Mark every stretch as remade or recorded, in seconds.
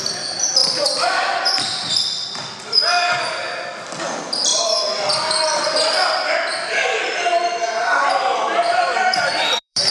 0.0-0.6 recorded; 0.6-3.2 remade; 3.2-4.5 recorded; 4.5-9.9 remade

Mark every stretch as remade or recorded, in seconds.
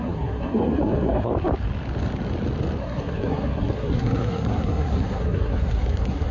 0.0-1.3 remade; 1.3-2.8 recorded; 2.8-6.3 remade